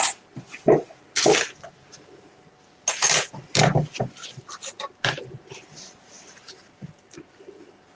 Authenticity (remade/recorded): recorded